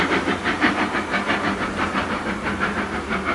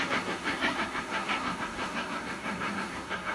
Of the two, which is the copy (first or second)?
second